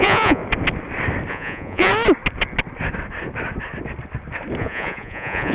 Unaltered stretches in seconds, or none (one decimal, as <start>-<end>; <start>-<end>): 0.4-1.3; 1.9-4.6